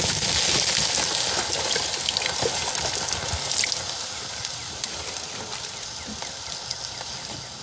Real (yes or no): yes